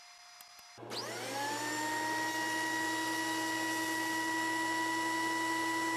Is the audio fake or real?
real